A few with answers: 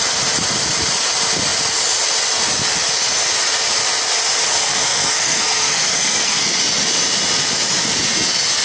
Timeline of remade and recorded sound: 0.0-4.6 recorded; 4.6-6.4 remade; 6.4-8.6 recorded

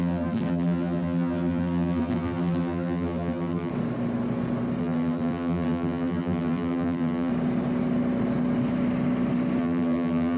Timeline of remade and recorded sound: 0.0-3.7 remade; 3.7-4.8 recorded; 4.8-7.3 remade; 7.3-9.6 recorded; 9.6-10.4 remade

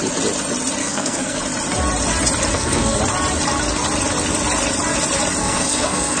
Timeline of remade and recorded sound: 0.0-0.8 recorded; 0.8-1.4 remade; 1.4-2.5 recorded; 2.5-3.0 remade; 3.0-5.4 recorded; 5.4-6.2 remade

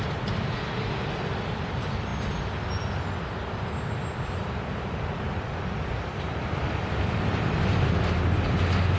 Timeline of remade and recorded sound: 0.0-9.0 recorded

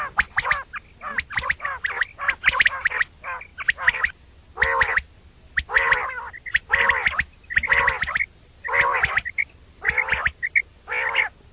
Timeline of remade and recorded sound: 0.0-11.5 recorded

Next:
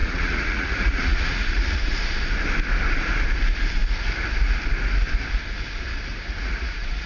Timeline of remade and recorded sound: 0.0-1.8 remade; 1.8-6.1 recorded; 6.1-7.1 remade

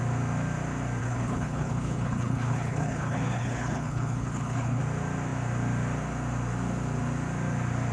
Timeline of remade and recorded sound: 0.0-1.0 recorded; 1.0-4.8 remade; 4.8-7.9 recorded